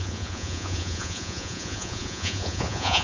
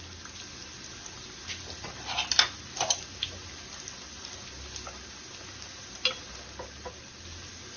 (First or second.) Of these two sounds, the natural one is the second